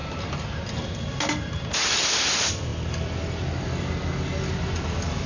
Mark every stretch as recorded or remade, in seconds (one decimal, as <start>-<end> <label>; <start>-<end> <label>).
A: 0.0-5.3 recorded